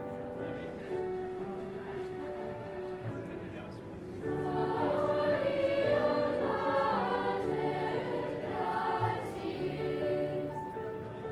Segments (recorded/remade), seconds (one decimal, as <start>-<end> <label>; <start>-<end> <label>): 0.0-0.8 recorded; 0.8-3.1 remade; 3.1-11.3 recorded

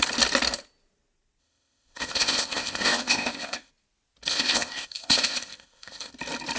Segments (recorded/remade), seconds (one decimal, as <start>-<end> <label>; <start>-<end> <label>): 0.0-1.4 recorded; 1.4-3.7 remade; 3.7-4.3 recorded; 4.3-6.1 remade; 6.1-6.6 recorded

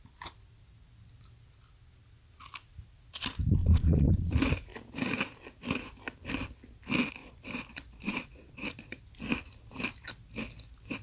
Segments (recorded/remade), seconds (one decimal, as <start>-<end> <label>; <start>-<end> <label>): 0.0-3.6 recorded; 3.6-4.3 remade; 4.3-7.2 recorded; 7.2-9.0 remade; 9.0-11.0 recorded

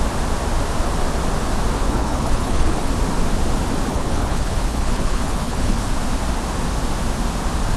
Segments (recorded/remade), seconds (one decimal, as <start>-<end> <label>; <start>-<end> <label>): 0.0-1.8 recorded; 1.8-2.9 remade; 2.9-3.9 recorded; 3.9-5.9 remade; 5.9-7.8 recorded